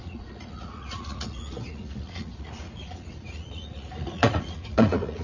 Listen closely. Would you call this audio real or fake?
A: fake